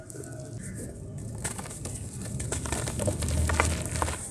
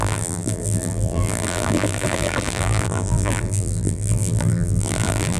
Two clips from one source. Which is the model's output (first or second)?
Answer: second